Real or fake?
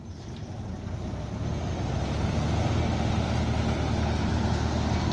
real